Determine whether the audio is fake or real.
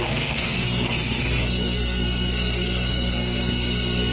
fake